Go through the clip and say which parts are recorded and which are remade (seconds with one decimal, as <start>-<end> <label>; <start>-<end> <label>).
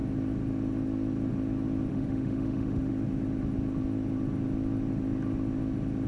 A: 0.0-1.9 recorded; 1.9-2.9 remade; 2.9-6.1 recorded